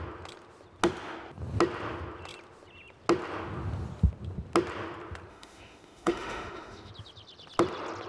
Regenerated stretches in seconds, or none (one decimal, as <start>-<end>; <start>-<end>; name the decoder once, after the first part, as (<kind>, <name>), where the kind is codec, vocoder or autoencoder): 5.3-6.9 (autoencoder, DAC-VAE)